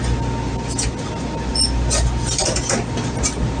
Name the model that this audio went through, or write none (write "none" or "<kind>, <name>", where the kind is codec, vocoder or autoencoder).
none